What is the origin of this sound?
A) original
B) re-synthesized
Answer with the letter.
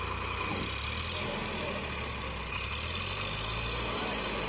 A